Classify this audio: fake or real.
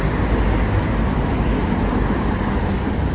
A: real